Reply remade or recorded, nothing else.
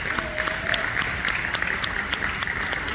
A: recorded